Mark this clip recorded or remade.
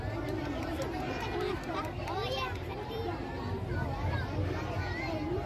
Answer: remade